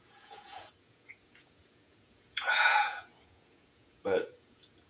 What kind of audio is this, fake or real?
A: fake